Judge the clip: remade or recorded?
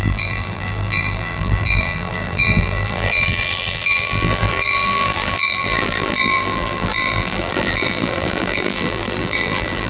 remade